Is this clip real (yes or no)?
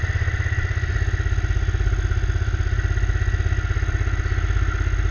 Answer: yes